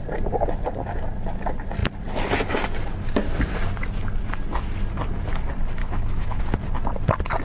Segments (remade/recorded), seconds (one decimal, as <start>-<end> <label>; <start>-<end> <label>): 0.0-5.8 recorded; 5.8-6.4 remade; 6.4-7.4 recorded